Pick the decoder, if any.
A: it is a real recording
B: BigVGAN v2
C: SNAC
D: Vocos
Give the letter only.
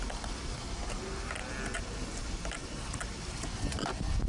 A